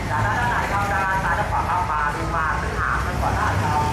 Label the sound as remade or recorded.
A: recorded